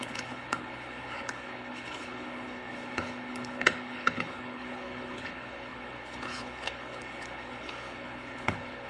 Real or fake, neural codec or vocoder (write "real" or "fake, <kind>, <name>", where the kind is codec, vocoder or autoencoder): fake, codec, HILCodec